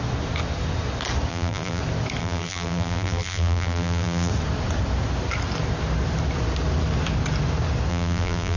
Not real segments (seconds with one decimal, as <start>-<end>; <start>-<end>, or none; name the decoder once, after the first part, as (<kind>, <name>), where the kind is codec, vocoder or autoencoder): 1.3-1.8 (vocoder, BigVGAN v2); 2.2-4.3; 7.9-8.6